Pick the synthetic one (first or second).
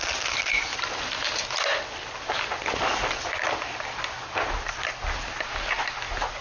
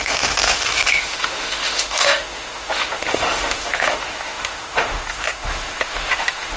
second